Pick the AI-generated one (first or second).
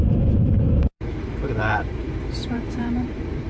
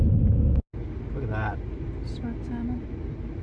first